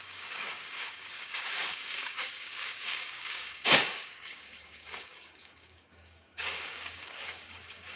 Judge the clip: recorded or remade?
remade